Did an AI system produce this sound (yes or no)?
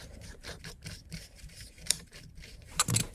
yes